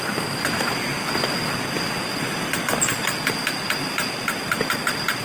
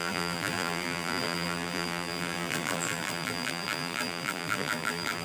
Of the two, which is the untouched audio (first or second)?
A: first